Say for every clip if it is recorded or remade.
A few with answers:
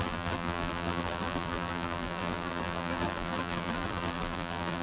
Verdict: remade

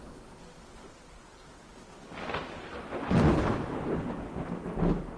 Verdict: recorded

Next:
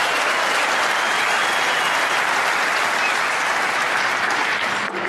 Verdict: recorded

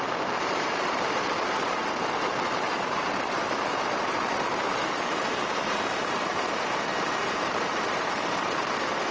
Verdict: remade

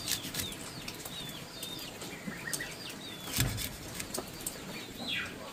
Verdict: recorded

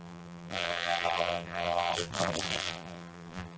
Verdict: remade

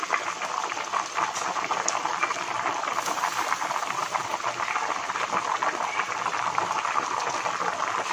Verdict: recorded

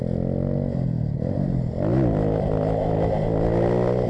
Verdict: recorded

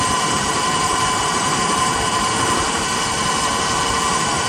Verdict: remade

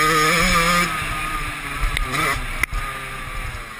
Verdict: recorded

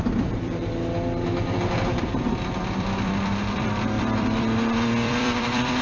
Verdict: remade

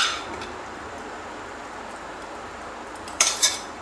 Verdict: remade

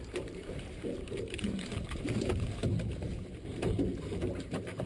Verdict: remade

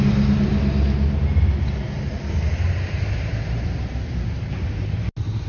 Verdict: recorded